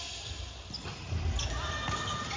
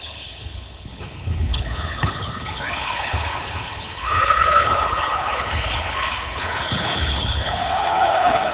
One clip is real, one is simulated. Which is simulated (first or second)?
second